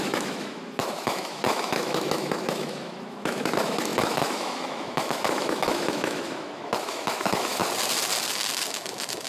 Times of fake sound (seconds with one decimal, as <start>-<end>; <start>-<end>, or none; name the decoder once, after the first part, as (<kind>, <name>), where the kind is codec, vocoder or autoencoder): 0.0-7.6 (autoencoder, DAC-VAE); 8.7-9.3